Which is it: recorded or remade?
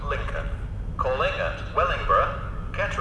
recorded